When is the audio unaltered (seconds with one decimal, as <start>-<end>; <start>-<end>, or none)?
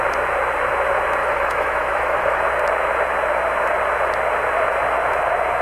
0.0-1.2; 2.4-5.6